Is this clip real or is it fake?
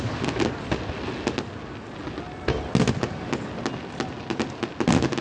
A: real